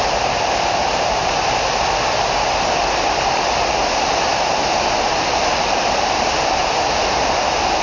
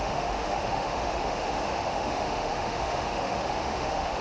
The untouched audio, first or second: first